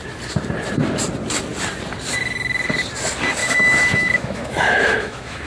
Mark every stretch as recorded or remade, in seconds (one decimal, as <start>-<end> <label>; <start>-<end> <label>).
0.0-3.4 recorded; 3.4-5.5 remade